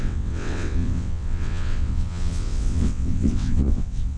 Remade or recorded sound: remade